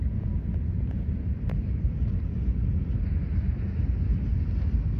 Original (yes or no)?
yes